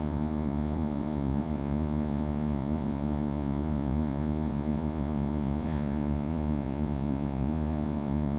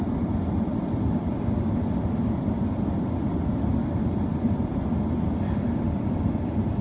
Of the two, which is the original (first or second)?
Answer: second